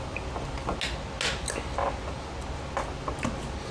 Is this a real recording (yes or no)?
yes